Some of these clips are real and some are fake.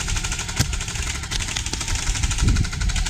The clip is real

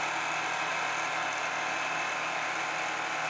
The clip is real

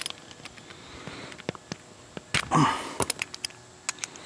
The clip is real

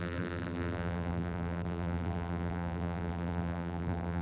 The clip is fake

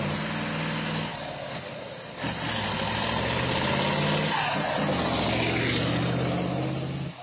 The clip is real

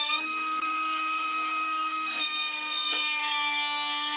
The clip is fake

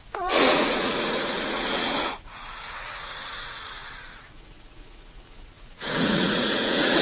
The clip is fake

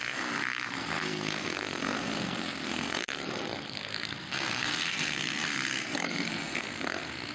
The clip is fake